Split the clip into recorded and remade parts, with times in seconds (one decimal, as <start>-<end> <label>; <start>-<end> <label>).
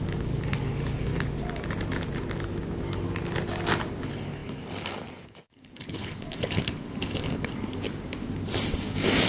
0.0-1.1 remade; 1.1-4.0 recorded; 4.0-8.2 remade; 8.2-8.8 recorded; 8.8-9.3 remade